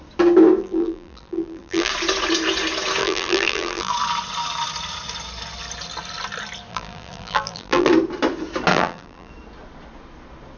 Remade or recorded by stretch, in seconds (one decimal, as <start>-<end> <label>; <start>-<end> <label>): 0.0-0.6 recorded; 0.6-1.9 remade; 1.9-3.0 recorded; 3.0-3.9 remade; 3.9-6.7 recorded; 6.7-7.9 remade; 7.9-8.7 recorded; 8.7-9.3 remade; 9.3-10.6 recorded